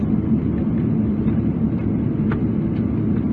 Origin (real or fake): real